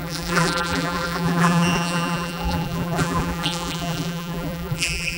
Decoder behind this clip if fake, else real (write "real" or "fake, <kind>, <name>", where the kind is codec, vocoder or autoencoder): fake, vocoder, BigVGAN v2